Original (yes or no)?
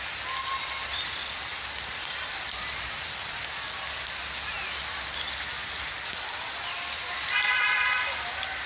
yes